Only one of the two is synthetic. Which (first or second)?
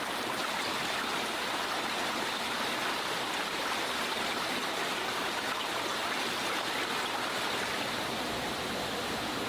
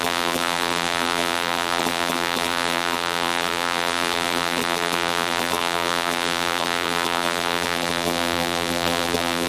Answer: second